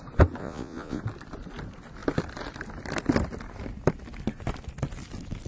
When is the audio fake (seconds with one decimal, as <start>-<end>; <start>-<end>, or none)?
0.4-1.0